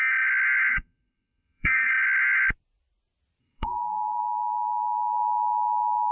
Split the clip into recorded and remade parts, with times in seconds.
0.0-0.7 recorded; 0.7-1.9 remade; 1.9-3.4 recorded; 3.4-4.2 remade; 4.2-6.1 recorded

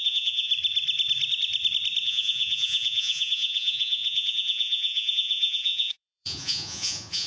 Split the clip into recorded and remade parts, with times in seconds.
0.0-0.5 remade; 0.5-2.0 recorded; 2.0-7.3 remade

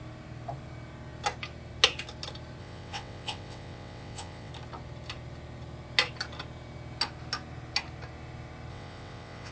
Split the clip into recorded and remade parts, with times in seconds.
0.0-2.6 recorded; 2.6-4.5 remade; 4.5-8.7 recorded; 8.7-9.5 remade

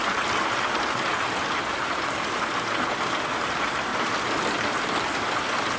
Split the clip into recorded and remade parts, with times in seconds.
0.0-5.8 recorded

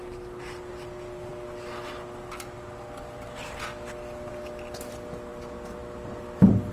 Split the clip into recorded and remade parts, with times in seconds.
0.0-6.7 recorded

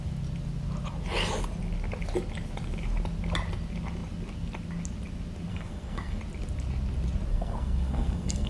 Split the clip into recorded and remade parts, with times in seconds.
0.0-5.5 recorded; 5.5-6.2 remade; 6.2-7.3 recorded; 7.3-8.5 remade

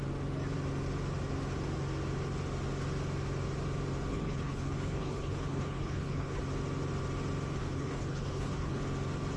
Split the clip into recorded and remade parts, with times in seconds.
0.0-4.1 recorded; 4.1-6.4 remade; 6.4-7.6 recorded; 7.6-8.8 remade; 8.8-9.4 recorded

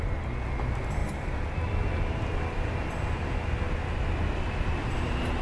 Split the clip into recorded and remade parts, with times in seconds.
0.0-5.4 recorded